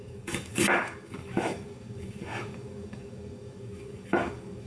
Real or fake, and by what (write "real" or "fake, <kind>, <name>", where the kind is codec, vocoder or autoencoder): fake, codec, DAC